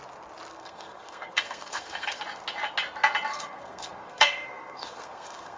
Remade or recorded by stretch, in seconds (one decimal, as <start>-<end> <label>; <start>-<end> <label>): 0.0-0.5 recorded; 0.5-2.2 remade; 2.2-3.3 recorded; 3.3-5.6 remade